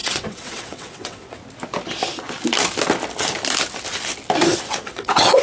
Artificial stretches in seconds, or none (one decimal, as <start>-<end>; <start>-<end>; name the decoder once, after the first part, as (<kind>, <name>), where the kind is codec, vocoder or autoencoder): 0.0-1.4 (vocoder, WaveNeXt); 4.6-5.4